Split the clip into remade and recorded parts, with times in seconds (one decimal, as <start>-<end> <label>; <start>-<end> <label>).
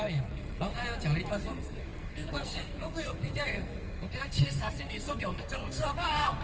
0.0-0.8 remade; 0.8-1.3 recorded; 1.3-6.4 remade